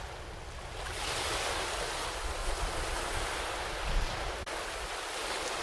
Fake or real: real